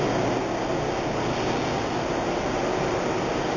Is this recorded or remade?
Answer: recorded